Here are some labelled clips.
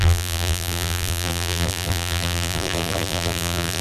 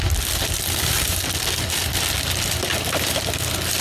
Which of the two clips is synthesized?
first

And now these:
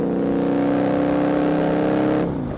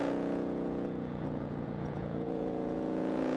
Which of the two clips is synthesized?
second